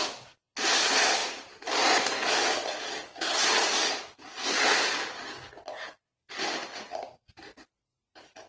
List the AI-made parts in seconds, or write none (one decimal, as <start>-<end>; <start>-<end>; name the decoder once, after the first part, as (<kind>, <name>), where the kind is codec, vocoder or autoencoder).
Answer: none